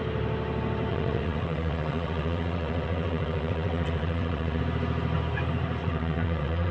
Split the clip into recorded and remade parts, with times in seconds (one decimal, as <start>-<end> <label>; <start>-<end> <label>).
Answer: 0.0-0.9 recorded; 0.9-4.6 remade; 4.6-5.8 recorded; 5.8-6.7 remade